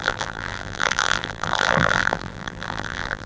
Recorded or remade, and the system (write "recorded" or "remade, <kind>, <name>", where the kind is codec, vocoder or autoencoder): remade, vocoder, BigVGAN v2